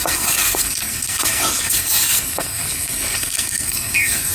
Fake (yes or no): yes